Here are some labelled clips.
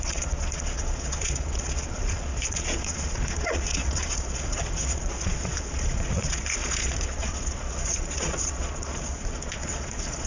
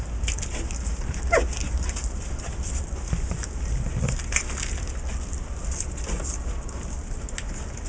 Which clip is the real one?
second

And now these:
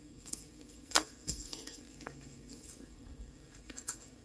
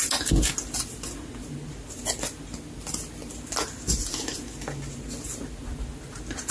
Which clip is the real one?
second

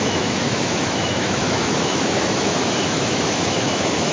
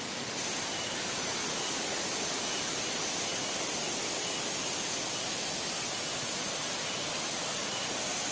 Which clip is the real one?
second